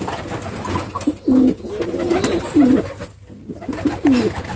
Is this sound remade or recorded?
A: recorded